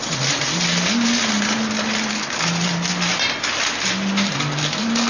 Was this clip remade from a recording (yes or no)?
no